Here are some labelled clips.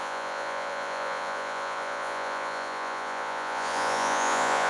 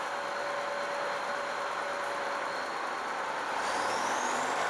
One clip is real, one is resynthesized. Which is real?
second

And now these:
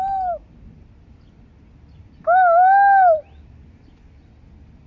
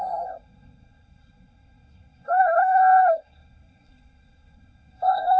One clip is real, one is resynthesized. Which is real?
first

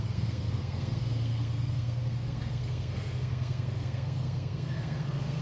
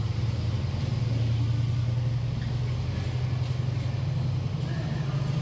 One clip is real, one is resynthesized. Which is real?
second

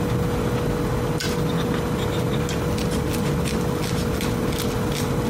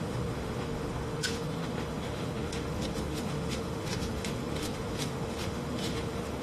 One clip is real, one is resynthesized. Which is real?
first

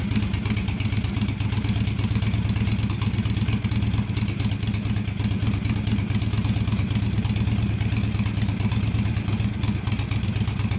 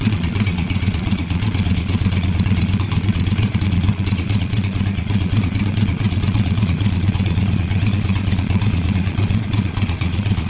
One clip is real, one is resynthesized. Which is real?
first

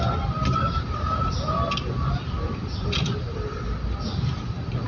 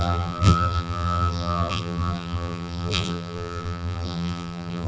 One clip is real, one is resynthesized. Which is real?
first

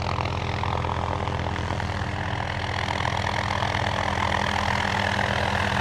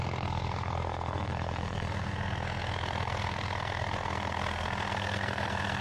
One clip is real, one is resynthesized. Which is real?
first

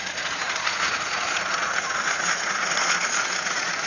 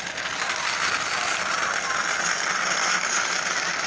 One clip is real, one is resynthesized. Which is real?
second